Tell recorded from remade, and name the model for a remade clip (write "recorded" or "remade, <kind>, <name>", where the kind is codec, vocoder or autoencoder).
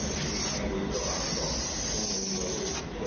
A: recorded